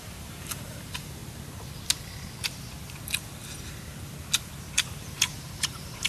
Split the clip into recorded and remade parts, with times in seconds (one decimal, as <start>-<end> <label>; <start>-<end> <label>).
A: 0.0-1.2 remade; 1.2-4.6 recorded; 4.6-6.1 remade